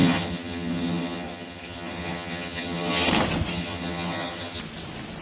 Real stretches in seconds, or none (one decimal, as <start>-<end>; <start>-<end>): 3.1-3.5; 4.6-5.2